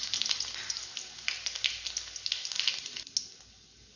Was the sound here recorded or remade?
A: recorded